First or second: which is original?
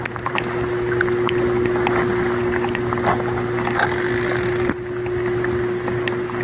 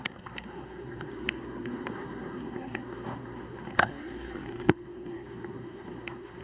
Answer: first